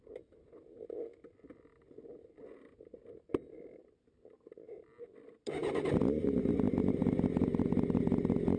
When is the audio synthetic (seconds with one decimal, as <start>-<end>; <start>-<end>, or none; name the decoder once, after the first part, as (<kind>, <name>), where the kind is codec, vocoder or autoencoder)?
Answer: 7.0-8.0 (vocoder, BigVGAN v2)